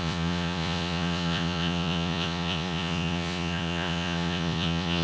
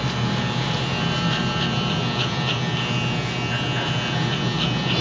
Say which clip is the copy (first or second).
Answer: first